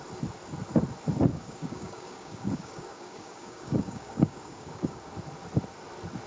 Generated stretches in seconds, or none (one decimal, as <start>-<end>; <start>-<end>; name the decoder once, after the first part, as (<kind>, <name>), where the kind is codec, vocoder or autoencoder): 1.3-5.1 (codec, DAC)